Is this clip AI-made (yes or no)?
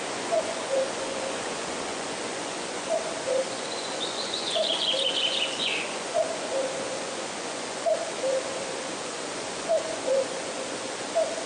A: yes